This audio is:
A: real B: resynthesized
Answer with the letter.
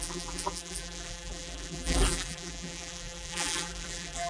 B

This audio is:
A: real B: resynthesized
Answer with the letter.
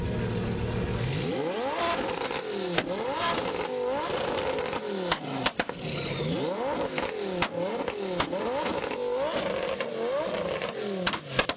A